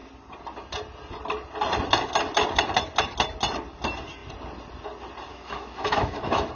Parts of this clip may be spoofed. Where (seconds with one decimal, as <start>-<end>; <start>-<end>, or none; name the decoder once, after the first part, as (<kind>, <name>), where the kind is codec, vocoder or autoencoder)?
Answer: 5.3-6.5 (autoencoder, DAC-VAE)